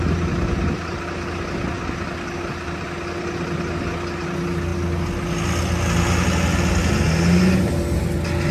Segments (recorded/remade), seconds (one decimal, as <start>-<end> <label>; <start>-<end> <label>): 0.0-8.5 recorded